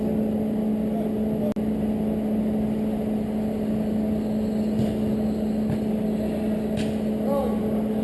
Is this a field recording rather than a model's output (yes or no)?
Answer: yes